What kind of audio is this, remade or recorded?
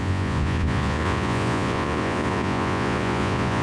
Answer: remade